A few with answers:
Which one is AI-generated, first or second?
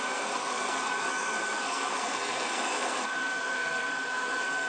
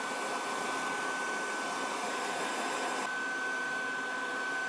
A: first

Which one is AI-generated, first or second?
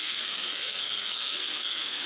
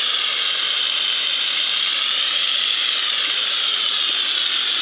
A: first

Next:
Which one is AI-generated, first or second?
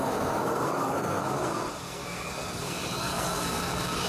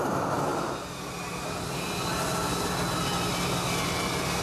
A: first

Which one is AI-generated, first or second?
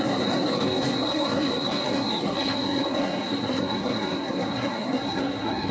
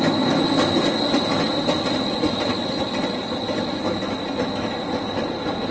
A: first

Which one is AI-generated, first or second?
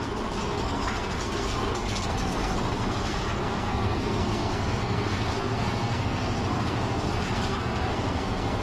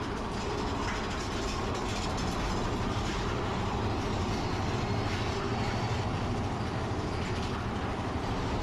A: first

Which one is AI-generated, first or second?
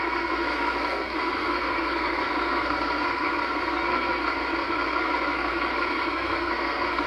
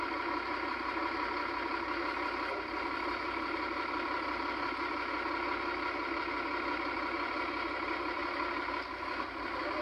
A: first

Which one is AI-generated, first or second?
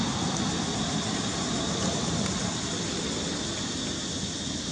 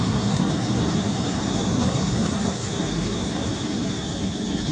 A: second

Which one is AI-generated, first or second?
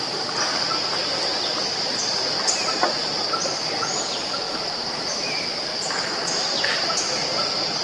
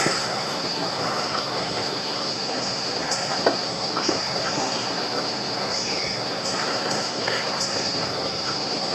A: second